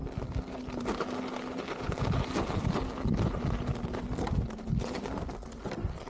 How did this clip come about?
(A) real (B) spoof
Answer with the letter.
A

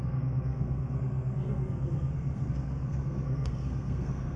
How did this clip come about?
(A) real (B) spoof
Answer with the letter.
B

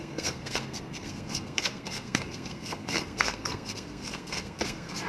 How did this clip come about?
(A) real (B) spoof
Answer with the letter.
B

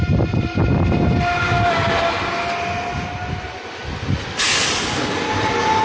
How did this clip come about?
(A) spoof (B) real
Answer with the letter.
B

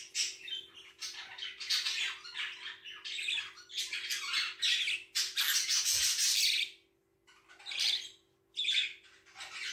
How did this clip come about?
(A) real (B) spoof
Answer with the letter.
A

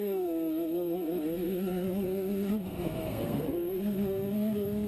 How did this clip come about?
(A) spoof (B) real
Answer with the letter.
A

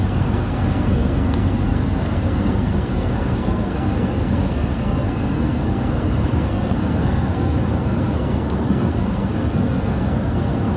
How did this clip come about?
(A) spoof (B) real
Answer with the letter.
A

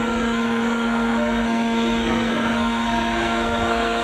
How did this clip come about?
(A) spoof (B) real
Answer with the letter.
A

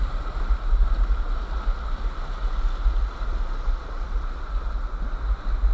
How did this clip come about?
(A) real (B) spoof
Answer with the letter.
A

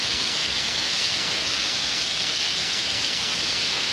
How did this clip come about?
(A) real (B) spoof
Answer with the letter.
B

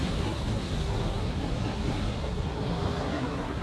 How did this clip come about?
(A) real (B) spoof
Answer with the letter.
B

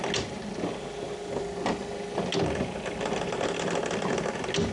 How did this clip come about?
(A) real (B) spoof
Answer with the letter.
A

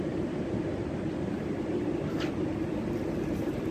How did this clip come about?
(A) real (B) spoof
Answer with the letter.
A